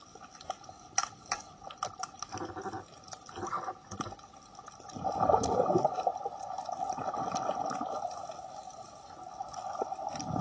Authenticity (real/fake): real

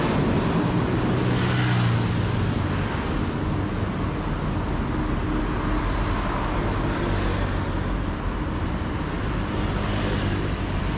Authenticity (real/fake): real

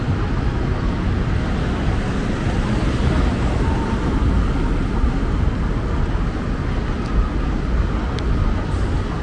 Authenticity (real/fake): real